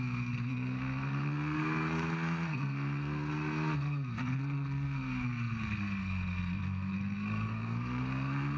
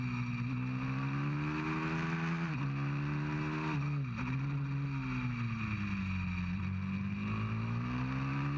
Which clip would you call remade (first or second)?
first